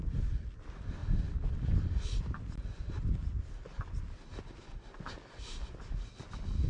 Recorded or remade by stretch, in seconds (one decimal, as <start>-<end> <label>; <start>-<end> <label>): 0.0-6.7 recorded